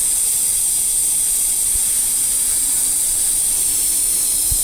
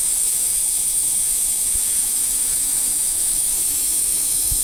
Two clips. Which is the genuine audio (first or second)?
first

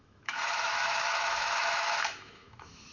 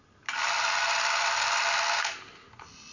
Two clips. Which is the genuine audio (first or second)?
second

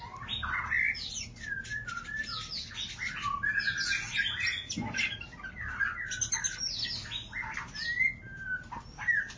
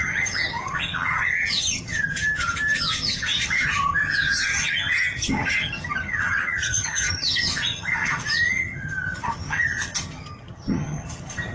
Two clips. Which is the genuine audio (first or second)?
first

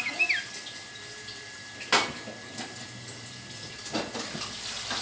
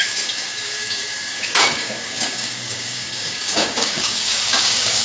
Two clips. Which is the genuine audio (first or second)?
first